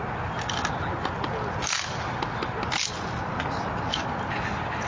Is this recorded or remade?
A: recorded